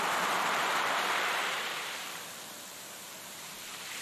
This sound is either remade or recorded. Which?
remade